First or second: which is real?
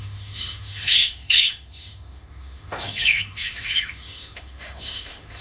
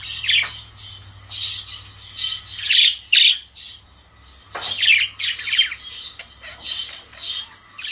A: second